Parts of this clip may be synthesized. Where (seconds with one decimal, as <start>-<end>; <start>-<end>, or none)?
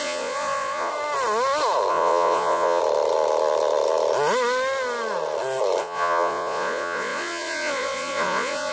0.0-0.9; 1.9-2.8; 5.8-8.7